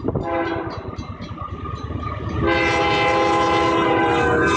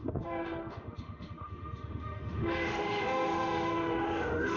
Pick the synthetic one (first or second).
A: second